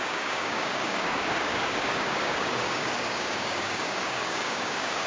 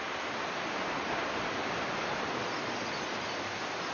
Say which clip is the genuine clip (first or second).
second